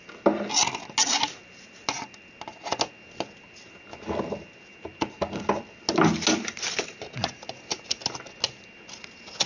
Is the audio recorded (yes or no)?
yes